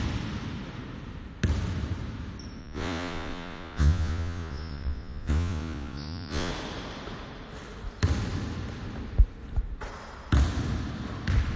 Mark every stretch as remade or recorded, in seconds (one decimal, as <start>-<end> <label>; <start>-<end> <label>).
0.0-2.6 recorded; 2.6-6.5 remade; 6.5-11.6 recorded